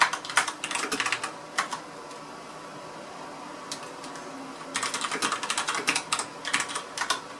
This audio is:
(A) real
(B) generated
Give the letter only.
A